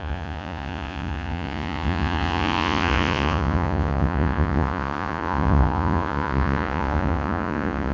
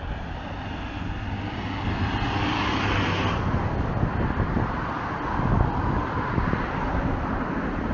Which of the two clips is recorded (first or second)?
second